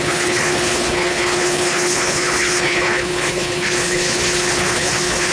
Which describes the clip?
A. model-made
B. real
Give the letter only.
A